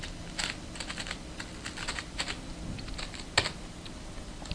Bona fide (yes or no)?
yes